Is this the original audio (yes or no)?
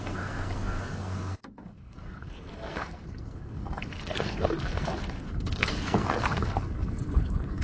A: no